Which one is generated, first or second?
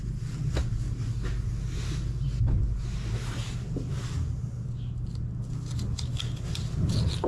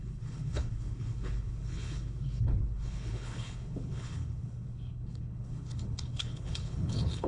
second